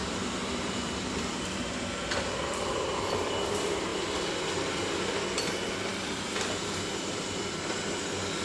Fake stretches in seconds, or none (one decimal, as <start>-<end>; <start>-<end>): 0.0-2.1; 5.9-7.2